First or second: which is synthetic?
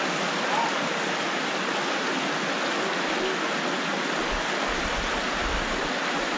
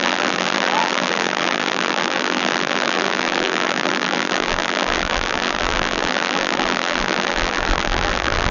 second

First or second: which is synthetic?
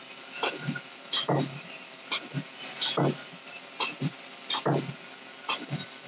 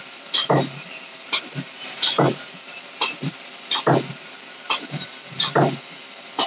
second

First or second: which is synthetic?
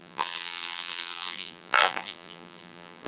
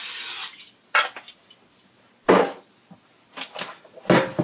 first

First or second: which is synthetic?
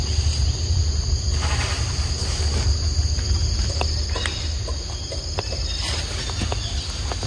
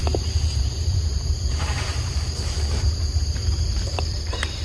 second